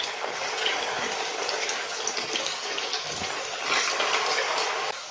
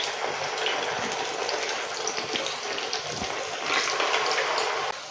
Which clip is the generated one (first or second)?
first